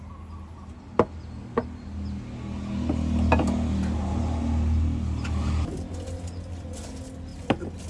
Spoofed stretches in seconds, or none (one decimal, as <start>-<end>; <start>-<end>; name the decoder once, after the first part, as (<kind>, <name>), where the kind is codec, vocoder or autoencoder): none